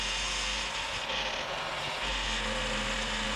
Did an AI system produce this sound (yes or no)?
no